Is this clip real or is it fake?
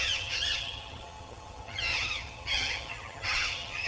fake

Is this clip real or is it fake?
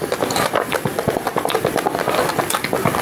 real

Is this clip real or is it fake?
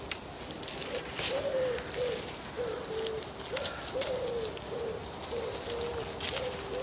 real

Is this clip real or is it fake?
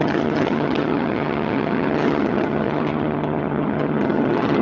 fake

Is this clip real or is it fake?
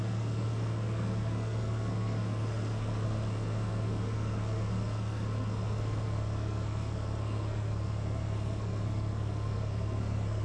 fake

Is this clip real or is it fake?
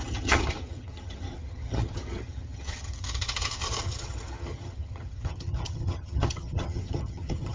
fake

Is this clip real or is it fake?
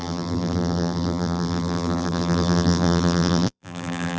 fake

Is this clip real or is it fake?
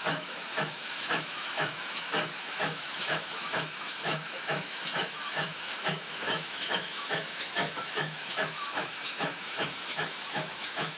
fake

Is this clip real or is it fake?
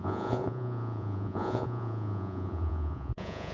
fake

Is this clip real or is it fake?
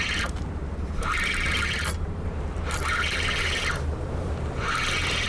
fake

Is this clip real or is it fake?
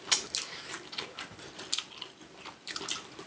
real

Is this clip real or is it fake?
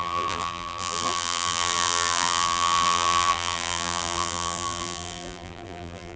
fake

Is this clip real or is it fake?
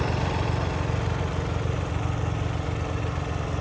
real